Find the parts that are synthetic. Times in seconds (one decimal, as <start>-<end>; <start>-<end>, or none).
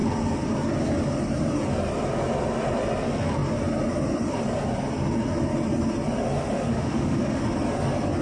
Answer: 6.7-7.4